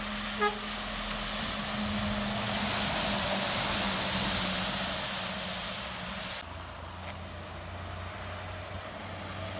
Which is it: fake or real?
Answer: real